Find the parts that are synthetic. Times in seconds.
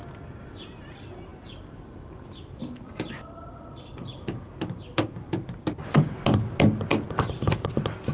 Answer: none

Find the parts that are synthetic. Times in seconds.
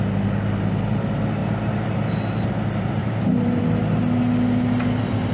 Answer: 3.0-3.6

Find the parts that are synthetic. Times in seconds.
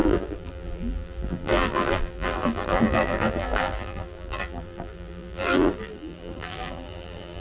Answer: 0.0-7.4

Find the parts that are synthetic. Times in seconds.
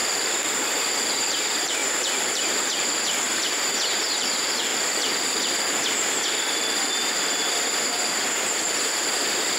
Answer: 1.2-1.8; 2.3-4.7; 6.9-9.6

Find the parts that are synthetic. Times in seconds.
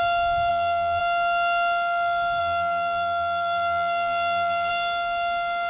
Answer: 0.5-1.0; 2.4-4.7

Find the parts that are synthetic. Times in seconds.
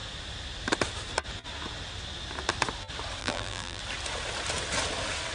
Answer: 3.2-3.8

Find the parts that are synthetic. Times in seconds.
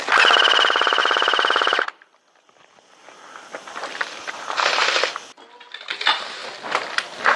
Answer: 0.0-1.0; 4.1-4.8; 5.6-6.4